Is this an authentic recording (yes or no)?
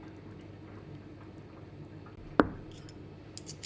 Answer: yes